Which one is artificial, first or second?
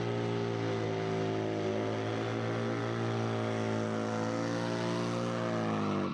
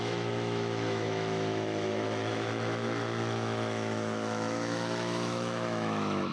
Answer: second